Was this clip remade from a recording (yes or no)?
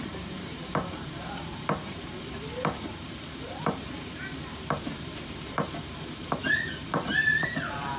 yes